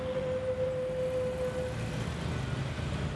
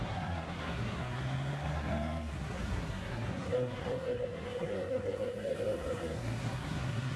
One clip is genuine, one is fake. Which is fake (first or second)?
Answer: second